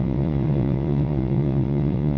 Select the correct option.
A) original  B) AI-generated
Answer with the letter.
B